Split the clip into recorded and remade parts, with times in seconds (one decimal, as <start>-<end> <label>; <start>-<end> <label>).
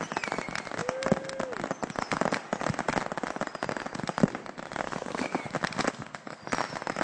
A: 0.0-4.8 recorded; 4.8-5.4 remade; 5.4-5.9 recorded; 5.9-6.4 remade; 6.4-7.0 recorded